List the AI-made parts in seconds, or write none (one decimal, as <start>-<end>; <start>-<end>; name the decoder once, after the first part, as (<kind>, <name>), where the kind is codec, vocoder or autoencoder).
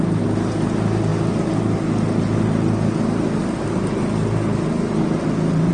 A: none